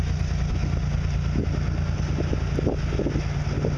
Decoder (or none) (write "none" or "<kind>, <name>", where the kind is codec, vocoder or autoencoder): none